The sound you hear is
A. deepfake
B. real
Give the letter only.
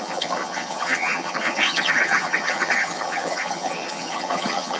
A